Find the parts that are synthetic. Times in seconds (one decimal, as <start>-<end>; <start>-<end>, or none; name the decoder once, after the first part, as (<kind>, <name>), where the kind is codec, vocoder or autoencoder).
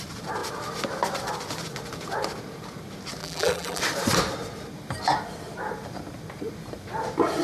3.2-3.8 (vocoder, BigVGAN v2)